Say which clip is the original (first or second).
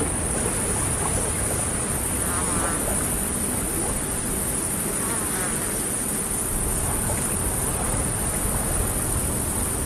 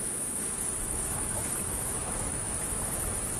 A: first